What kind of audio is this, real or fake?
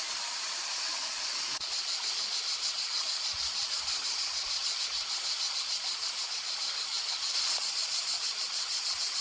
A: fake